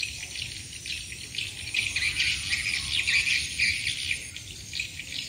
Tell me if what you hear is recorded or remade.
recorded